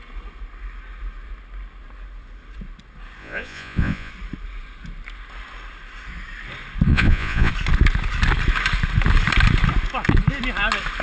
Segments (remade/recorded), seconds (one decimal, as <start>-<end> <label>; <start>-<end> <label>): 0.0-3.2 recorded; 3.2-4.1 remade; 4.1-6.9 recorded; 6.9-7.5 remade; 7.5-11.0 recorded